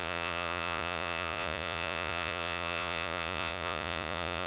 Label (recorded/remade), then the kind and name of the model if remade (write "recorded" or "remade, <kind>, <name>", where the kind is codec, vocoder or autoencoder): remade, vocoder, Vocos